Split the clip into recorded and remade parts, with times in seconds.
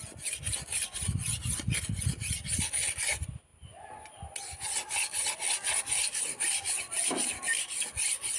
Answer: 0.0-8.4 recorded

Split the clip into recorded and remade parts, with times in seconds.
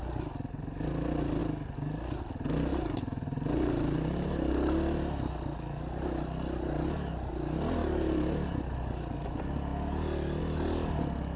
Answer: 0.0-2.7 recorded; 2.7-4.5 remade; 4.5-7.8 recorded; 7.8-8.7 remade; 8.7-11.4 recorded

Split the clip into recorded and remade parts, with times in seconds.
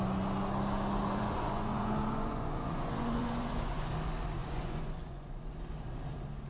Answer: 0.0-1.0 recorded; 1.0-3.9 remade; 3.9-4.4 recorded; 4.4-5.4 remade; 5.4-6.5 recorded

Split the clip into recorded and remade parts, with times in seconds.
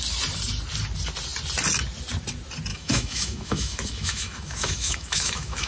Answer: 0.0-2.7 recorded; 2.7-5.7 remade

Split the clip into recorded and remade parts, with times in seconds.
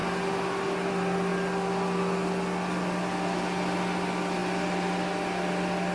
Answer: 0.0-5.9 recorded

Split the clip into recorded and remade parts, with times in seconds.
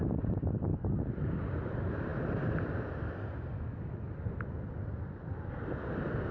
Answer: 0.0-6.3 recorded